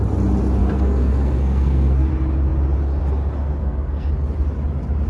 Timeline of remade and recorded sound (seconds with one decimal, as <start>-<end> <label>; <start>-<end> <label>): 0.0-0.6 recorded; 0.6-2.1 remade; 2.1-3.4 recorded; 3.4-4.1 remade; 4.1-5.1 recorded